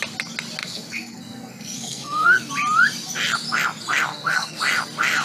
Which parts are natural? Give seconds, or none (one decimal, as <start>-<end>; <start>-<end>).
0.0-0.6; 2.5-4.1; 4.6-5.2